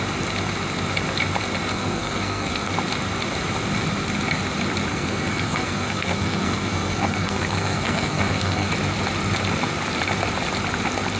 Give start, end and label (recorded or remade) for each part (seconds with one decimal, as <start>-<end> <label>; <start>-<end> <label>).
0.0-1.7 recorded; 1.7-2.7 remade; 2.7-4.9 recorded; 4.9-8.7 remade; 8.7-11.2 recorded